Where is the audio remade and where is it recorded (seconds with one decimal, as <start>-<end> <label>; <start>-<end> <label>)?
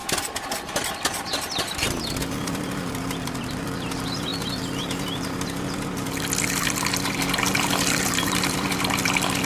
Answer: 0.0-0.5 recorded; 0.5-9.5 remade